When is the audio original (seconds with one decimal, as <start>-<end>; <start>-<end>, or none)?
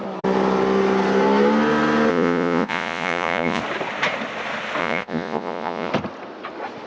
0.0-2.1; 3.6-4.8; 5.9-6.9